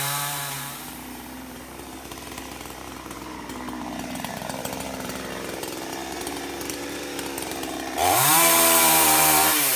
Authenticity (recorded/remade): remade